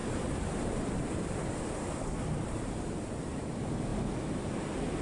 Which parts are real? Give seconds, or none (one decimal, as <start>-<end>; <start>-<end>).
3.0-5.0